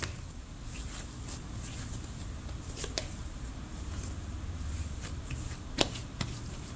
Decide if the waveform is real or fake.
real